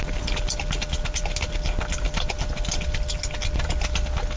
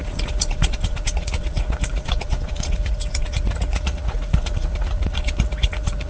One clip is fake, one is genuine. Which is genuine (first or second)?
first